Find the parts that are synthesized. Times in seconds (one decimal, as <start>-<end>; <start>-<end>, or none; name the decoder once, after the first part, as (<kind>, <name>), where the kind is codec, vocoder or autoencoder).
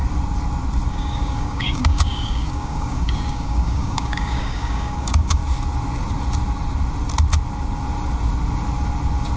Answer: 0.9-5.4 (codec, DAC)